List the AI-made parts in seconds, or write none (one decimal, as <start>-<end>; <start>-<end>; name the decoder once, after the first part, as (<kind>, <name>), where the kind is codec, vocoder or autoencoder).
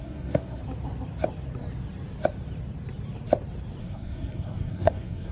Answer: 0.0-0.6 (codec, SNAC); 3.8-5.3